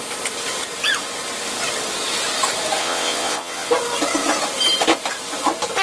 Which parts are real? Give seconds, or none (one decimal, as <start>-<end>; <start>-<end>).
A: 0.0-2.8; 3.7-5.8